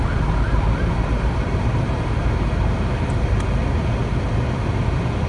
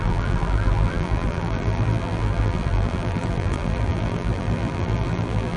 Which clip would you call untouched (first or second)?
first